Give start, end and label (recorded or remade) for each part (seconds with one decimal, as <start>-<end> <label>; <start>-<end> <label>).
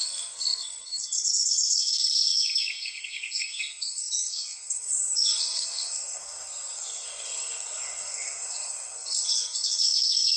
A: 0.0-10.4 remade